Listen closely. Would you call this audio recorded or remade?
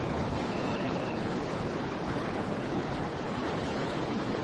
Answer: remade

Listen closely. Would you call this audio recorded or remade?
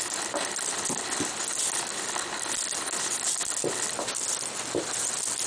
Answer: recorded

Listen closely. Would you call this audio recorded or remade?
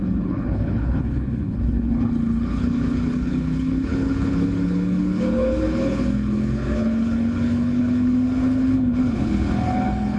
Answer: remade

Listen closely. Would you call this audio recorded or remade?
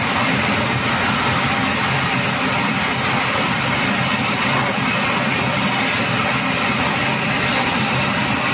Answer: recorded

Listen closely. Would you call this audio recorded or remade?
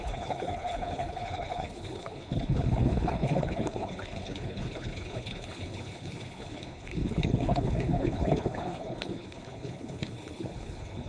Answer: remade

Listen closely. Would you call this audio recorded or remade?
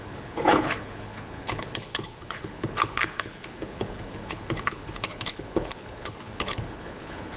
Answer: remade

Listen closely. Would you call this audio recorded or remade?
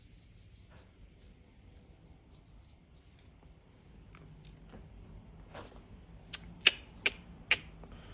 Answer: recorded